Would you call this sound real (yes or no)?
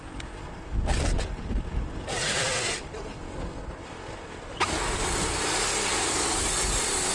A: yes